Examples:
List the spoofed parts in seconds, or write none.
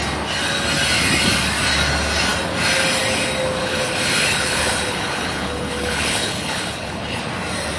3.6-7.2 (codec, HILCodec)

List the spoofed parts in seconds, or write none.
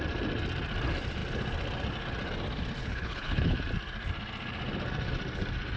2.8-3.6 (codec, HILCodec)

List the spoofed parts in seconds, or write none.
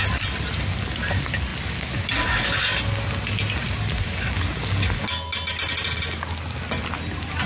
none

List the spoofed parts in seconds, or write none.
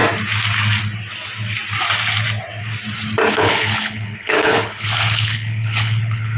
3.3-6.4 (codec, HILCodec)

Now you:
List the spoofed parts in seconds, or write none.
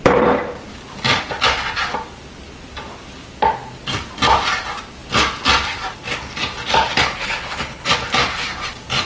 7.0-7.9 (codec, HILCodec)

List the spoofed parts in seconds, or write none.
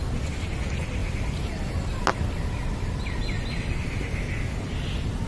none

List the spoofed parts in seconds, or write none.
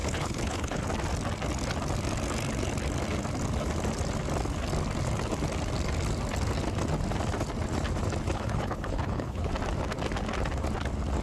0.0-0.8 (codec, HILCodec); 8.3-9.5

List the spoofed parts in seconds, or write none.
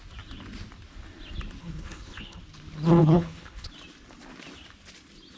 1.6-2.4 (codec, HILCodec); 3.0-3.7